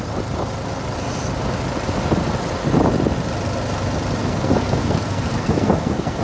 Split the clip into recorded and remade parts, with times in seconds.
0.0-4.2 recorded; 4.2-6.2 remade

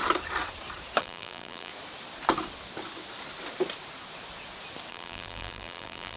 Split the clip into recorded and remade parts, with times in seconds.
0.0-1.0 recorded; 1.0-1.7 remade; 1.7-4.9 recorded; 4.9-6.2 remade